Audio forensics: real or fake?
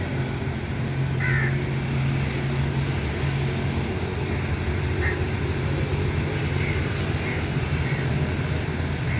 real